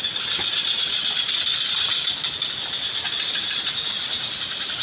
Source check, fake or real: real